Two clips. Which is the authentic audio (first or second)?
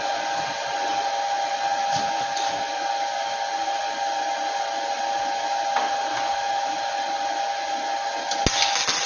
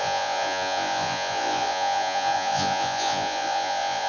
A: first